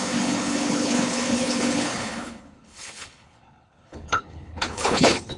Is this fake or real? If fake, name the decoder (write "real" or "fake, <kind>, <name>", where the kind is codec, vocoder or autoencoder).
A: fake, codec, HILCodec